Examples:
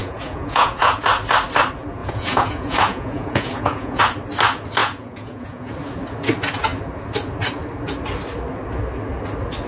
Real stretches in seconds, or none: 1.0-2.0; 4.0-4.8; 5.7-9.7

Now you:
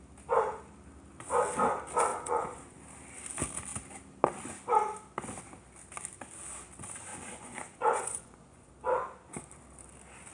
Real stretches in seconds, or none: 0.0-2.1; 2.8-7.1; 8.7-10.3

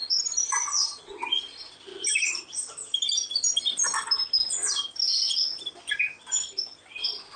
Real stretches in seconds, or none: 0.0-7.4

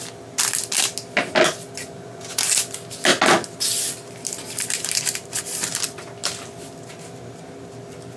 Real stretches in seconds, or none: 0.0-1.8; 2.4-8.2

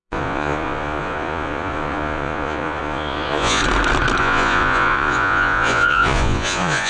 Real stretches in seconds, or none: 3.6-4.2

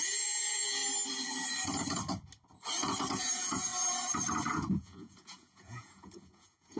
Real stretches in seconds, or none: 0.8-3.2; 3.7-4.7

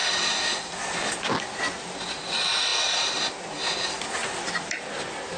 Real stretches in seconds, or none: 0.0-5.4

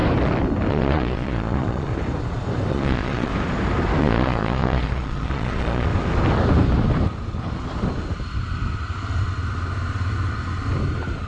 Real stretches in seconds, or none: 0.0-0.7; 1.9-2.7; 3.3-4.0; 5.9-11.3